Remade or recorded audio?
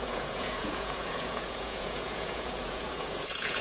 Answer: remade